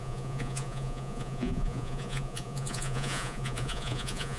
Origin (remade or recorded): remade